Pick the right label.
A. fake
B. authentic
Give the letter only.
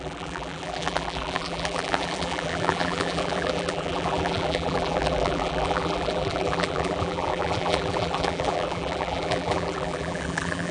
A